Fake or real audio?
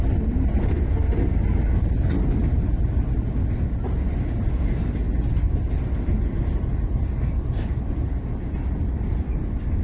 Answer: real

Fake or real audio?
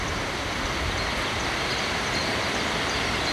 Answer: real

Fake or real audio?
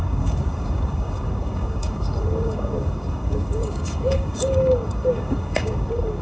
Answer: fake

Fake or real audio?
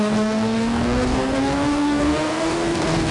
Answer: fake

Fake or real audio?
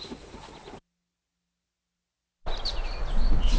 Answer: real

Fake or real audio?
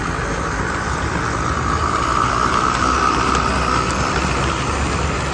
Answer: real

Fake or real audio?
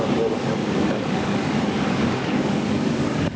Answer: fake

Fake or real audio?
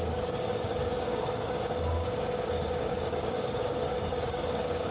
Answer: fake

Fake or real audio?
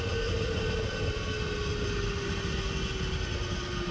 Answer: real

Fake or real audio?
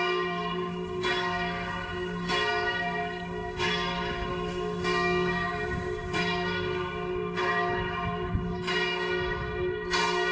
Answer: fake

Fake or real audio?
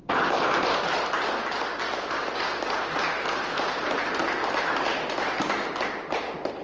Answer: real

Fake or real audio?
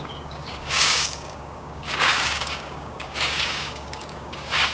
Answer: fake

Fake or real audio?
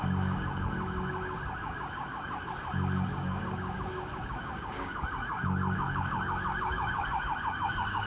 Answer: fake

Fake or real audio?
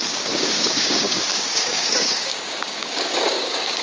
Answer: fake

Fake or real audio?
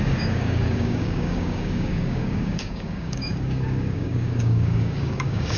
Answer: fake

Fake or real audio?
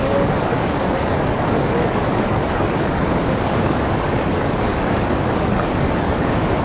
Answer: fake